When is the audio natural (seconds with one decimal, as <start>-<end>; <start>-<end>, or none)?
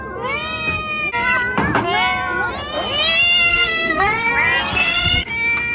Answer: 0.0-3.5; 4.3-4.7; 5.3-5.7